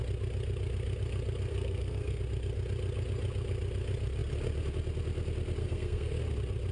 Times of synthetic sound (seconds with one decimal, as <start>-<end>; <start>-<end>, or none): 1.5-2.2; 5.6-6.2